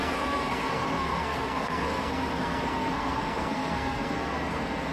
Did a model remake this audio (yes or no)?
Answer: yes